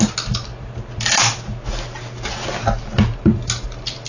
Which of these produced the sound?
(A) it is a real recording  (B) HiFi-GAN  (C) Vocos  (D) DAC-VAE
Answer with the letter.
A